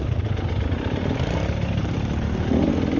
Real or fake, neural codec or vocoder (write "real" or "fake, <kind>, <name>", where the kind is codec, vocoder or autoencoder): real